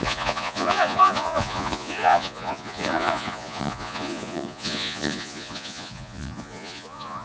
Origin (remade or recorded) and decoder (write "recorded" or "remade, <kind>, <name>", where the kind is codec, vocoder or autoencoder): remade, vocoder, Vocos